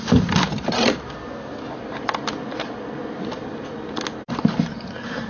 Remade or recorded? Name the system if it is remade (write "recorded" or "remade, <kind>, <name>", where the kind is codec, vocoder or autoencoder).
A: recorded